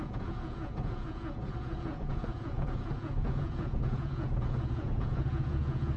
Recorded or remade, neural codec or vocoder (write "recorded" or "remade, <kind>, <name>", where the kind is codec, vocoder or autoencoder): remade, vocoder, Vocos